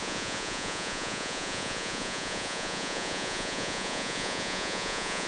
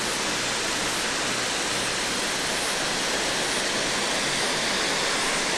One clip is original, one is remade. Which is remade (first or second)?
first